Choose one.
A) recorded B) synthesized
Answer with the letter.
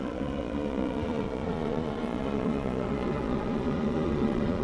B